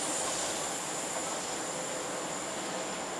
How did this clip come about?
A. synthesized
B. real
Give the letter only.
B